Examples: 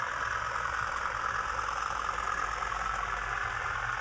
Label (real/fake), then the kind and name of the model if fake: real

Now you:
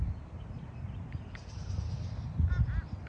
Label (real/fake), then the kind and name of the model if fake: real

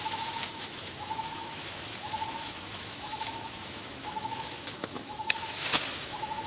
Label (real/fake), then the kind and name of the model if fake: fake, autoencoder, DAC-VAE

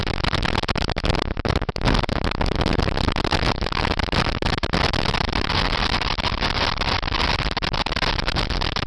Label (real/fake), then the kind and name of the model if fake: real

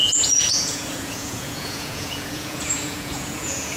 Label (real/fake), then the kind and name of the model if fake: fake, vocoder, Vocos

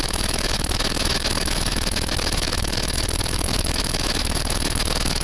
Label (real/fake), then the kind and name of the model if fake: fake, autoencoder, DAC-VAE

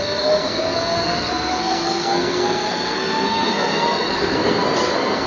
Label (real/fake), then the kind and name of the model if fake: fake, codec, SNAC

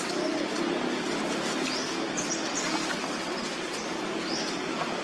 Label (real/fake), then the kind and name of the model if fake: real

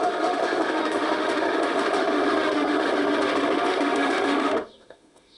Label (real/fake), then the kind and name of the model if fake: fake, autoencoder, DAC-VAE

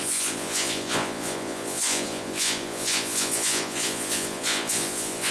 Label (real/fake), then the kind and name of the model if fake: fake, vocoder, Vocos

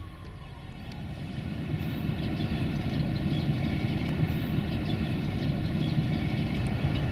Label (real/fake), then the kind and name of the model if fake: fake, vocoder, BigVGAN v2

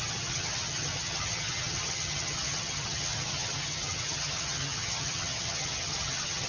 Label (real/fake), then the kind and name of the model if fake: fake, vocoder, HiFi-GAN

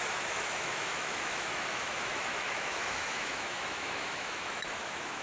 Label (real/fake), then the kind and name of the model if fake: fake, autoencoder, DAC-VAE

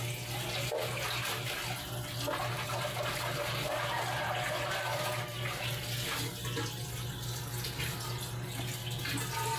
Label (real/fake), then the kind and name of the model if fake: real